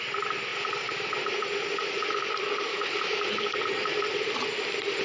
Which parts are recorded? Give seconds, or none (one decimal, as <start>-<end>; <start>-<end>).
0.0-2.7; 3.3-5.0